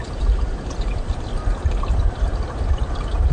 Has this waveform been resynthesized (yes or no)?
no